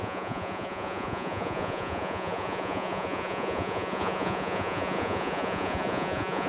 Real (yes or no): no